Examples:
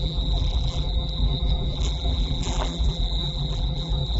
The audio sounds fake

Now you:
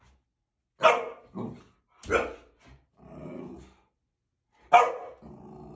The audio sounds real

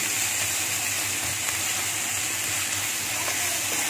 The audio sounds real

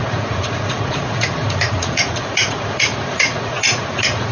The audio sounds fake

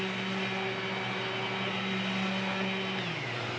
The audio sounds real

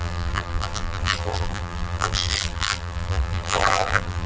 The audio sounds fake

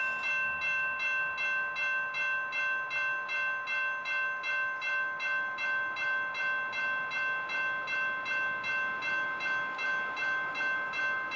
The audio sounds real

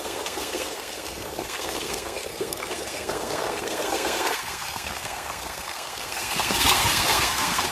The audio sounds fake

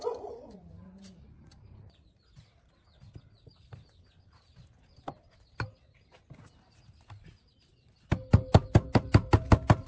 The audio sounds real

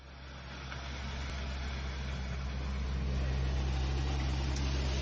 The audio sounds real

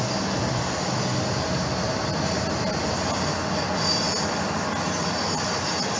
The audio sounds real